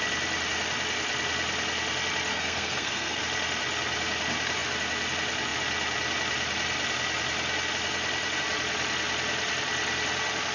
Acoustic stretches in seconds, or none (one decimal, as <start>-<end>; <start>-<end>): 0.0-2.3; 3.2-10.5